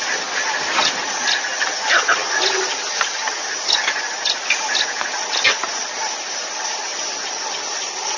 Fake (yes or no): no